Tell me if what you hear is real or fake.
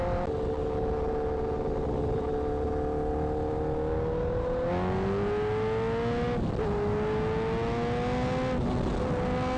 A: real